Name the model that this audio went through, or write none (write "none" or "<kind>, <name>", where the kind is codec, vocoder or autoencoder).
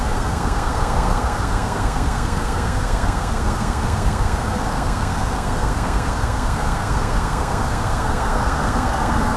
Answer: codec, SNAC